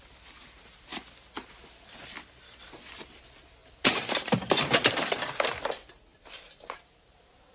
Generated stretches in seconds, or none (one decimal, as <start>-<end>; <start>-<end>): 3.6-5.6; 6.1-7.5

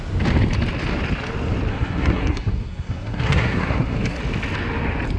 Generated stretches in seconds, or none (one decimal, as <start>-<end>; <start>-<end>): 1.7-4.2

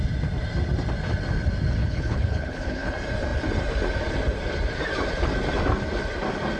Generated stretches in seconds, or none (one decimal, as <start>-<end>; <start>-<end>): 1.8-2.9

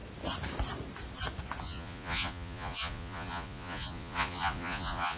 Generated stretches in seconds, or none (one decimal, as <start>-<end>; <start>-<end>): 1.6-5.2

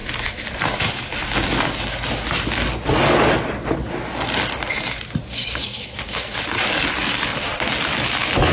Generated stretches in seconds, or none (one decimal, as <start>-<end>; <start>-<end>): 5.5-6.4

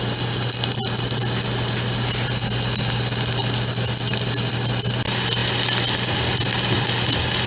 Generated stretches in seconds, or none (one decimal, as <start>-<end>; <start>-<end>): none

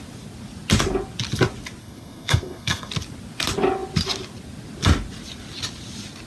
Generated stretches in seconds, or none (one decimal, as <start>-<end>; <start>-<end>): 1.8-2.9

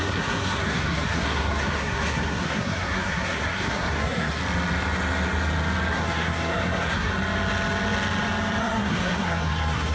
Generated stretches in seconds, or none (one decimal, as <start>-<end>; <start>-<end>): 0.0-4.4; 5.9-7.1; 8.6-9.9